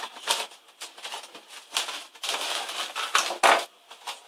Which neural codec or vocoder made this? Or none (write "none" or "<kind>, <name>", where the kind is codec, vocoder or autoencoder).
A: none